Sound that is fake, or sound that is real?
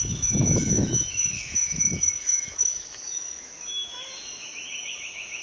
fake